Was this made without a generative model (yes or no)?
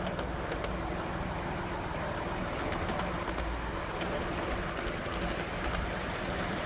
yes